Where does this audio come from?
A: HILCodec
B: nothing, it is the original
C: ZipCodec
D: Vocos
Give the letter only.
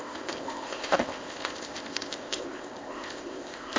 C